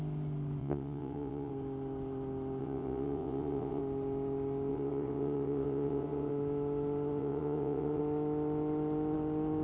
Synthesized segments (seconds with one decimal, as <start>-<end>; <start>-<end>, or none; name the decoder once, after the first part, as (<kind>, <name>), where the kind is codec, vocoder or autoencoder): 0.6-1.5 (vocoder, WaveNeXt); 2.6-3.8; 4.7-6.3; 7.2-8.0